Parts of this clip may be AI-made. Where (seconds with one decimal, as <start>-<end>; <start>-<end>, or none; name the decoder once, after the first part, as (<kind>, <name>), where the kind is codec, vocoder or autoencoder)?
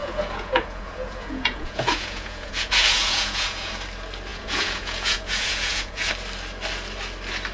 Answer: 0.0-3.7 (vocoder, Vocos); 4.3-6.1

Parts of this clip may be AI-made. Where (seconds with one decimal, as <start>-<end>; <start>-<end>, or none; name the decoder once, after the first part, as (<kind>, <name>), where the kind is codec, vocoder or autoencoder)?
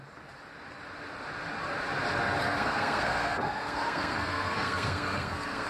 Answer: 2.4-5.7 (codec, SNAC)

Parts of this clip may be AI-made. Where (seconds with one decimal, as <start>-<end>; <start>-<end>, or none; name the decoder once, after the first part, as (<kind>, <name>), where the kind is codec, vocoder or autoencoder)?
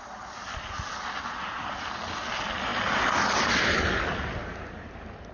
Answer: 4.4-5.3 (vocoder, BigVGAN v2)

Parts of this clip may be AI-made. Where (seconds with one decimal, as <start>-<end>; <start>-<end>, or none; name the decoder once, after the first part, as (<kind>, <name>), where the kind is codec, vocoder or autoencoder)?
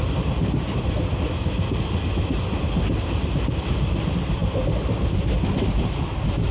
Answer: none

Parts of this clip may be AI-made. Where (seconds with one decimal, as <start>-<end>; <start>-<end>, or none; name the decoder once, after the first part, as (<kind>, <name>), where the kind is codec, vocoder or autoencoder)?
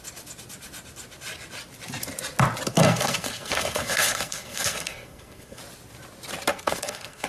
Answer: 2.7-5.6 (codec, SNAC); 6.5-7.3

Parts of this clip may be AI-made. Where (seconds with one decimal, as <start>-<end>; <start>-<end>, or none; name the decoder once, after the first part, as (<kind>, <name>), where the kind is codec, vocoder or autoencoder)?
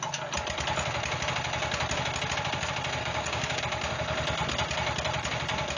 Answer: 3.0-3.6 (codec, DAC)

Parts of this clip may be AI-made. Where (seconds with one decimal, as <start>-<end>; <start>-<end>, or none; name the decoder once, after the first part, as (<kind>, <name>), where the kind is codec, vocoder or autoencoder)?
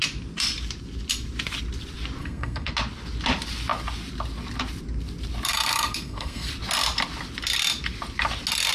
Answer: 2.2-2.7 (codec, SNAC); 5.5-6.5